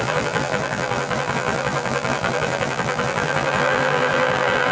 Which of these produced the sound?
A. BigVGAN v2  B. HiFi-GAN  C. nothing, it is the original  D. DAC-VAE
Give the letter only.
A